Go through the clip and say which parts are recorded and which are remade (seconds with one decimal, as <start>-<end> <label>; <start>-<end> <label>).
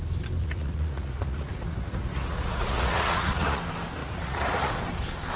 0.0-0.4 recorded; 0.4-3.6 remade; 3.6-4.0 recorded; 4.0-4.7 remade; 4.7-5.4 recorded